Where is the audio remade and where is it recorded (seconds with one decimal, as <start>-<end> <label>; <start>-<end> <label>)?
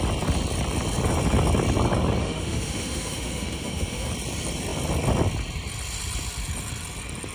0.0-2.2 recorded; 2.2-4.1 remade; 4.1-7.3 recorded